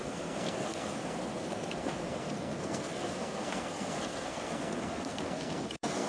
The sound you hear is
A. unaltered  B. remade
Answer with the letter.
B